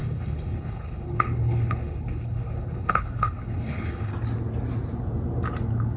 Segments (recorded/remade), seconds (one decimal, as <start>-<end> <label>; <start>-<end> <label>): 0.0-4.1 remade; 4.1-6.0 recorded